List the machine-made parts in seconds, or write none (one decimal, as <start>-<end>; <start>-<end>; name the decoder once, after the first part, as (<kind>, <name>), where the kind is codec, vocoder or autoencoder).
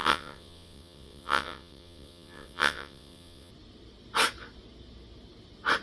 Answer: 0.0-3.5 (vocoder, WaveNeXt)